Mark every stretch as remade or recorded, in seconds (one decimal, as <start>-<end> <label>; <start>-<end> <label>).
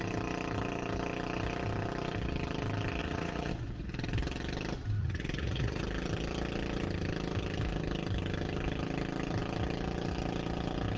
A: 0.0-3.0 recorded; 3.0-3.5 remade; 3.5-5.0 recorded; 5.0-5.8 remade; 5.8-11.0 recorded